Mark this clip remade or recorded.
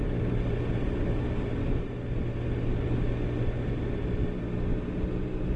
recorded